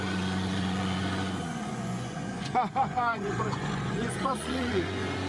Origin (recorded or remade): remade